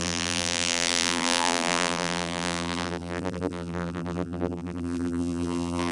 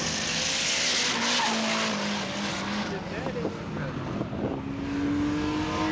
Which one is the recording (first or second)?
second